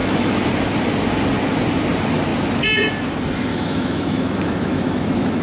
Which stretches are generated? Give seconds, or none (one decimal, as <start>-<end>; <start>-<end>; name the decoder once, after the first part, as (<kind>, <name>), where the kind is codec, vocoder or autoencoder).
0.0-0.5 (autoencoder, DAC-VAE); 3.5-5.4